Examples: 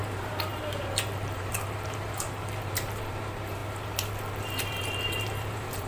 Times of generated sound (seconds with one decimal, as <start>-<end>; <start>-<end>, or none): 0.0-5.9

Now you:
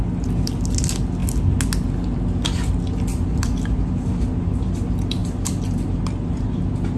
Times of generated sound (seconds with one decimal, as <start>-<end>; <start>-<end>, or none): 3.1-4.7; 5.2-7.0

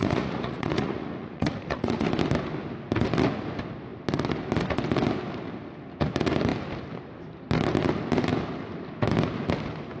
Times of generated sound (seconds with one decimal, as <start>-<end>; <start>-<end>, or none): 0.0-2.1

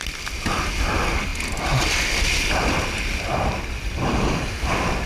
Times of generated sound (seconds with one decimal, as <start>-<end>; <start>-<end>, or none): none

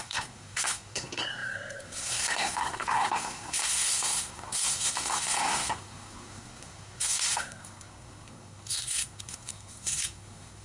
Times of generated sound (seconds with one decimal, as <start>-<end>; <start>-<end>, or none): 0.0-10.6